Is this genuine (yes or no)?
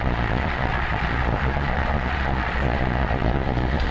no